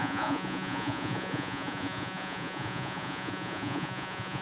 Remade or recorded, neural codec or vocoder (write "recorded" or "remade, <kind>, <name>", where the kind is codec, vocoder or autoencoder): remade, vocoder, Vocos